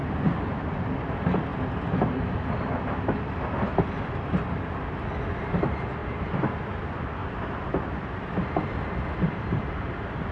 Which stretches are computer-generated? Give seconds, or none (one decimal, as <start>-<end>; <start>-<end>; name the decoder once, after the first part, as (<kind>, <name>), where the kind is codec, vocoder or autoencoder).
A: 0.0-0.6 (vocoder, BigVGAN v2); 1.5-2.4; 6.0-6.6; 7.2-7.8